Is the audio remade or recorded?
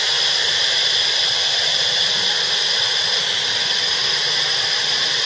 recorded